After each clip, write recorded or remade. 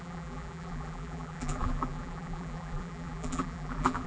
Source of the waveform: remade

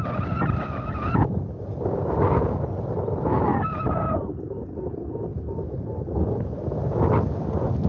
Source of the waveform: recorded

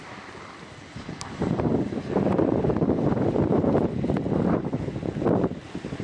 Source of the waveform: remade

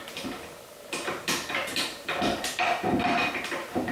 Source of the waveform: recorded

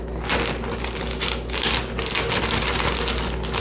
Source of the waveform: recorded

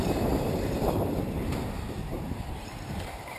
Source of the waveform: remade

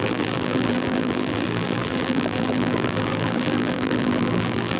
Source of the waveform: remade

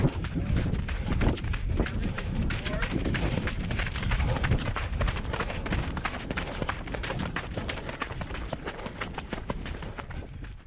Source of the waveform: remade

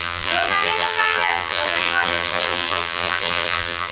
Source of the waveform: remade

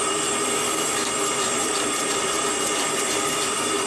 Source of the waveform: remade